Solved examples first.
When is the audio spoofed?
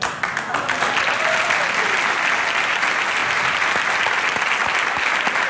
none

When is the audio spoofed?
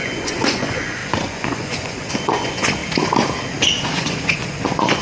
0.0-2.8 (vocoder, Vocos); 3.8-5.0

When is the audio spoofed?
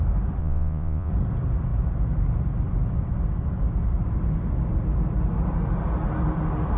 0.4-1.1 (vocoder, Vocos)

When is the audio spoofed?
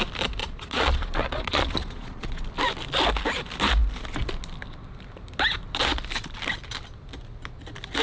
0.4-2.4 (vocoder, Vocos)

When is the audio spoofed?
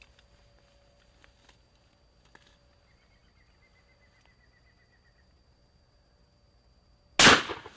none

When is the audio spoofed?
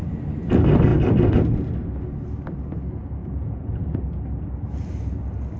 3.2-4.0 (vocoder, Vocos)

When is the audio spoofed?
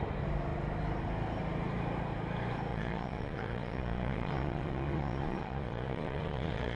2.7-6.8 (vocoder, Vocos)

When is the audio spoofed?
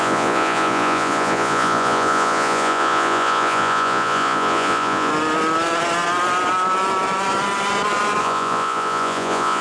0.0-5.1 (vocoder, Vocos); 8.2-9.6